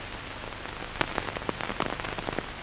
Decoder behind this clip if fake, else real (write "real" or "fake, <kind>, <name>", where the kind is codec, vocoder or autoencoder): real